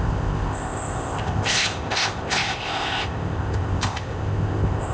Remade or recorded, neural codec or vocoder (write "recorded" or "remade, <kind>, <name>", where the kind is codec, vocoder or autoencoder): remade, codec, ZipCodec